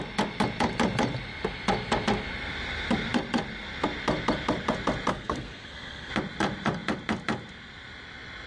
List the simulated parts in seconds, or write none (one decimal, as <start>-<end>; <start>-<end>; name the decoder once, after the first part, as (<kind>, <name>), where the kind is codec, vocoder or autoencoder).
5.1-6.1 (codec, SNAC)